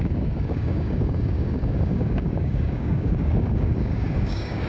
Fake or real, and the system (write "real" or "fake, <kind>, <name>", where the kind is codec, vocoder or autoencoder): fake, codec, DAC